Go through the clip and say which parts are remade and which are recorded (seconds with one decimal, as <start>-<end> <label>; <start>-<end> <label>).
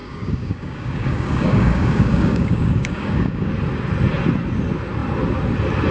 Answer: 0.0-3.5 remade; 3.5-5.9 recorded